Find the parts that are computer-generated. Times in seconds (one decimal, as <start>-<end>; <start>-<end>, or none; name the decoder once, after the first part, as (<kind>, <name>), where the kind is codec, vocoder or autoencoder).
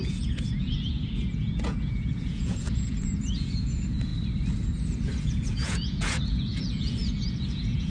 0.0-4.1 (vocoder, Vocos); 5.2-7.9